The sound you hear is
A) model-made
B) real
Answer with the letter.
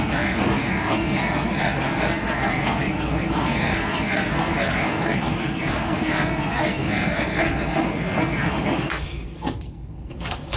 A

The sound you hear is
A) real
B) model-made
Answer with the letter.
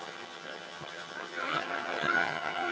B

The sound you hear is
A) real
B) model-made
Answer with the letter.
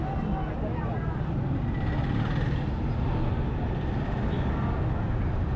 A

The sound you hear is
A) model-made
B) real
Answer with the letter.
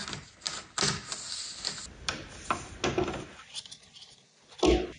B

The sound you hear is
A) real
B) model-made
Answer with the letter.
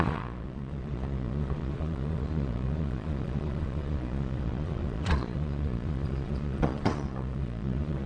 B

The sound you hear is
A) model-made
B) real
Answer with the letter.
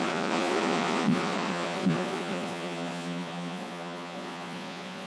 A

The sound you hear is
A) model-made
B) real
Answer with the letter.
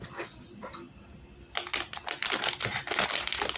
B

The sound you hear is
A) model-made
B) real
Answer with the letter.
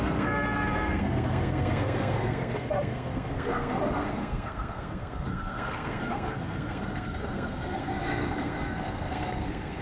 A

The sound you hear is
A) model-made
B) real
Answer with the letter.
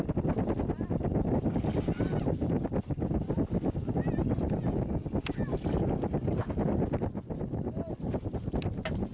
B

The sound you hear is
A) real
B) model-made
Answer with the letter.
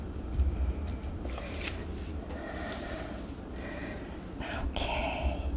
B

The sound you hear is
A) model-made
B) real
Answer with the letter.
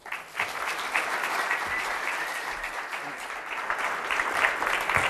B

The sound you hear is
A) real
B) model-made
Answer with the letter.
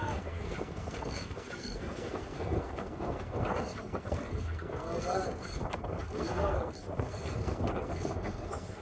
B